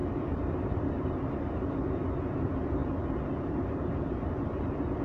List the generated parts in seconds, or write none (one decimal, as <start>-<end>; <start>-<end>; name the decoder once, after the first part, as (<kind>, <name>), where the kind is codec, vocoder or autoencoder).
0.0-1.4 (vocoder, BigVGAN v2); 2.8-4.1